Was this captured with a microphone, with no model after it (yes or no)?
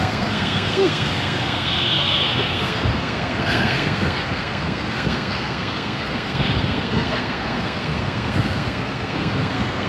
no